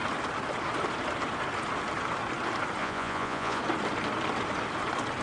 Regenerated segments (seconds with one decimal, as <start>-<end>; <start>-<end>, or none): 2.8-3.6